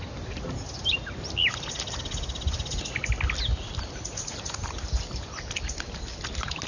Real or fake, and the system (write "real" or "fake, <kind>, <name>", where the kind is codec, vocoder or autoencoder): real